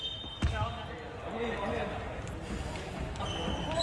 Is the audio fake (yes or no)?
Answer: no